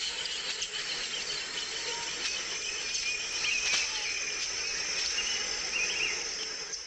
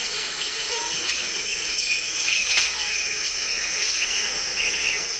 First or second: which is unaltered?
first